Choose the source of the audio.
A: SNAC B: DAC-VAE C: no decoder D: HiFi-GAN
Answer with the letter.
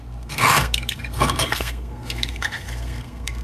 A